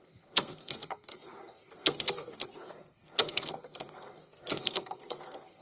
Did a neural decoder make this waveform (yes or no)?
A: yes